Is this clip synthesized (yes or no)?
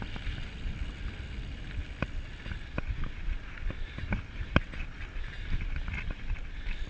no